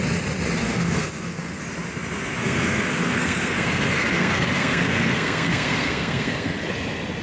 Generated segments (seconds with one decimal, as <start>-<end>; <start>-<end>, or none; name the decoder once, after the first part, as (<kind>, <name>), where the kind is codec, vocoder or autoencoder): 0.6-1.6 (codec, SNAC); 2.4-6.7